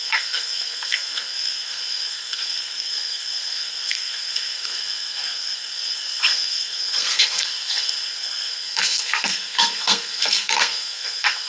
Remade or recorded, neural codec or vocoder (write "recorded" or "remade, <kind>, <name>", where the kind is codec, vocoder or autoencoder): remade, codec, SNAC